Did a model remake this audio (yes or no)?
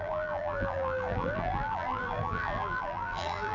yes